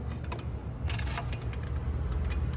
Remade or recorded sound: recorded